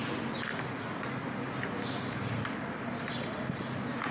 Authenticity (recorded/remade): recorded